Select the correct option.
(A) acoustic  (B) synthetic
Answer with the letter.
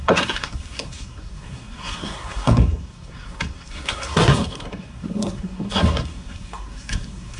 B